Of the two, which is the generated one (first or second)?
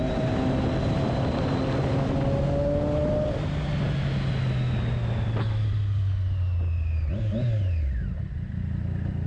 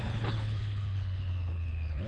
second